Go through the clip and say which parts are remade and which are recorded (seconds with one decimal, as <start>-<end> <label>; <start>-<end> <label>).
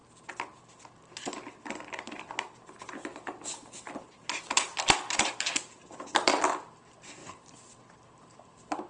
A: 0.0-4.4 recorded; 4.4-6.8 remade; 6.8-7.2 recorded; 7.2-7.8 remade; 7.8-8.9 recorded